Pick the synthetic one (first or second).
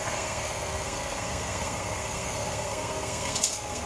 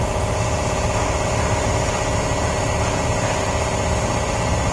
first